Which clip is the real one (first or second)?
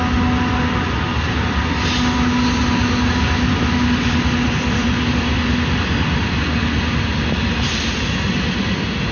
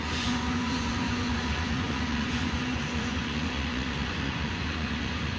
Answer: first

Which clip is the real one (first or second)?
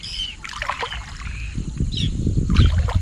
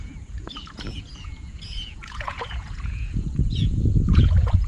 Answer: first